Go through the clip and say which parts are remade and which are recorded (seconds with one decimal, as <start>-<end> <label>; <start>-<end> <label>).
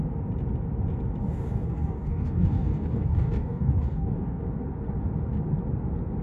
0.0-1.2 recorded; 1.2-4.4 remade; 4.4-6.2 recorded